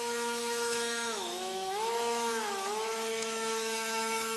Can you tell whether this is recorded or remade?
remade